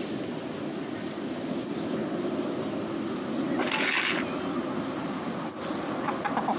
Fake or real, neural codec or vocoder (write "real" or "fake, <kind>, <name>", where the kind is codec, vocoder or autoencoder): real